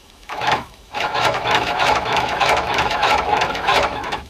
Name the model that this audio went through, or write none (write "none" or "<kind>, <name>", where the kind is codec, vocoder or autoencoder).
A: autoencoder, DAC-VAE